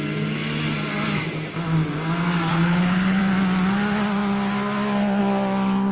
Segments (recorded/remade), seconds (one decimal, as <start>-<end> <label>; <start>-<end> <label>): 0.0-2.5 recorded; 2.5-3.2 remade; 3.2-5.9 recorded